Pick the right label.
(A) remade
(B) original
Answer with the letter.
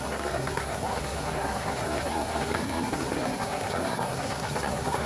A